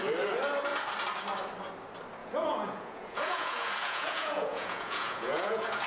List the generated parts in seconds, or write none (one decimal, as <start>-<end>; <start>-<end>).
2.2-5.9